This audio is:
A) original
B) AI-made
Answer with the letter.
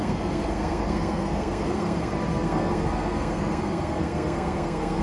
B